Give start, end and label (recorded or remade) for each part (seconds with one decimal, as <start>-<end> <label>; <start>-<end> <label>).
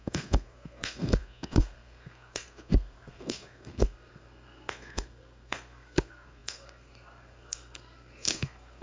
0.0-8.8 remade